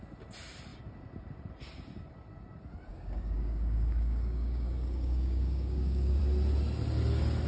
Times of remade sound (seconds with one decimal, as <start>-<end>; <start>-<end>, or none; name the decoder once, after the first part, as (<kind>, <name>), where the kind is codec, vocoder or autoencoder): 2.9-6.2 (codec, DAC)